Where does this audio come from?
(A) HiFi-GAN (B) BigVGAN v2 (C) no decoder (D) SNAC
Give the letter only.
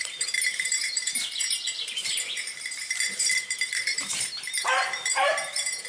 B